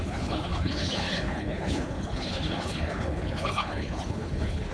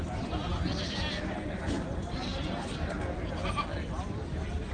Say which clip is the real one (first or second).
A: second